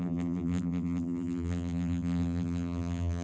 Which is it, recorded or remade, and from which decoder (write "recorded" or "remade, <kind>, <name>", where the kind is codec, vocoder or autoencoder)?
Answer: remade, vocoder, BigVGAN v2